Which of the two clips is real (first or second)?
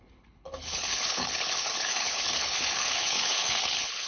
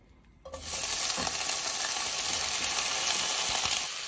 second